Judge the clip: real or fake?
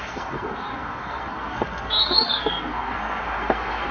fake